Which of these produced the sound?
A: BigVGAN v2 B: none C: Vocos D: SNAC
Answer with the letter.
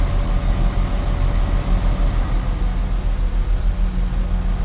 B